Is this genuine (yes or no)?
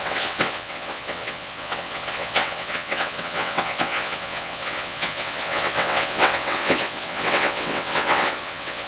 no